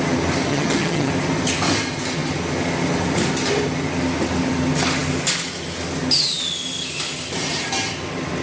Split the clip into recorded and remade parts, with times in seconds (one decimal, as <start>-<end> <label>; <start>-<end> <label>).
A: 0.0-0.5 recorded; 0.5-1.1 remade; 1.1-8.4 recorded